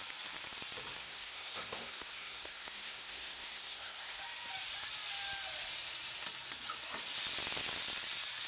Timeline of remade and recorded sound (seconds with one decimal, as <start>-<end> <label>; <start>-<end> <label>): 0.0-1.0 recorded; 1.0-4.2 remade; 4.2-8.5 recorded